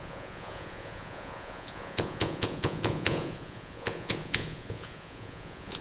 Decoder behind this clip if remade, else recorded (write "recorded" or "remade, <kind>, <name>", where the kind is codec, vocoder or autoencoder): remade, vocoder, Vocos